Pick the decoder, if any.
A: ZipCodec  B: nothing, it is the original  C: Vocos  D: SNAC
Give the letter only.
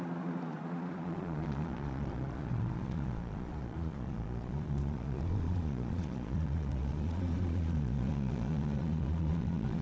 C